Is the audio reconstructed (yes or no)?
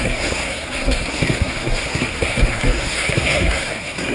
yes